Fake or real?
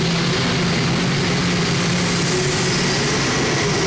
real